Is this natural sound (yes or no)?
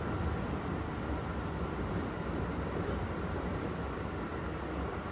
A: yes